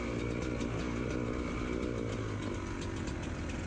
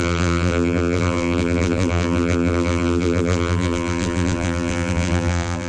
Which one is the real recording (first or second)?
first